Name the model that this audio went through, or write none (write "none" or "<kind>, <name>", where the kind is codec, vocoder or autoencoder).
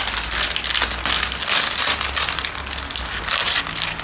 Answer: none